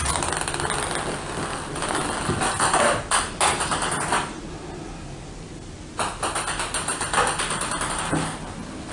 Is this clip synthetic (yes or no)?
no